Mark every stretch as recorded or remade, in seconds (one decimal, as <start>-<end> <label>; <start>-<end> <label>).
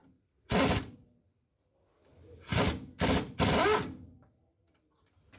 0.0-5.4 recorded